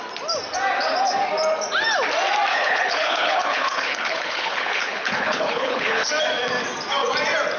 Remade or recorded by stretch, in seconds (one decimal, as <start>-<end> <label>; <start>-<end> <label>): 0.0-2.5 recorded; 2.5-6.1 remade; 6.1-7.6 recorded